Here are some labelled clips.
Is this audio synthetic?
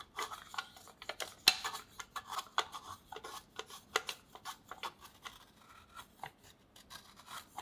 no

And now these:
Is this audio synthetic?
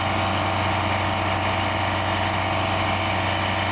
no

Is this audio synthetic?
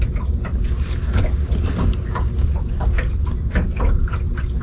no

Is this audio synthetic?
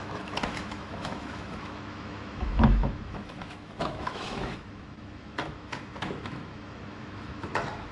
yes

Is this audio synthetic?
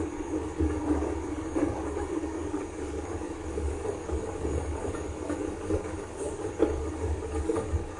yes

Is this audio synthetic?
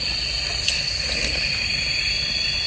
no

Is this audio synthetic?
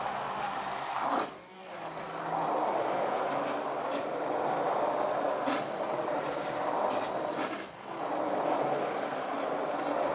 no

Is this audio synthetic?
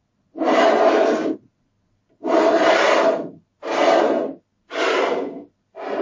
no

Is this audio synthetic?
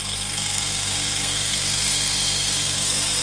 yes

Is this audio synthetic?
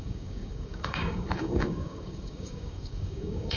yes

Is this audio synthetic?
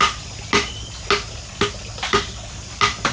no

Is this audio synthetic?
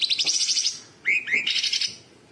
no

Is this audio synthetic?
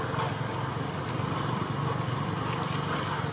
no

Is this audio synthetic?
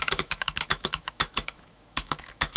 yes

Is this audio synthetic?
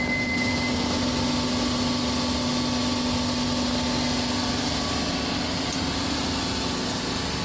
no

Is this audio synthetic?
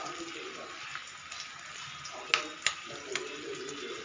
no